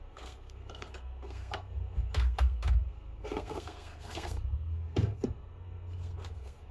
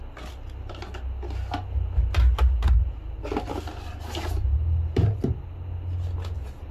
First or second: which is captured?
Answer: second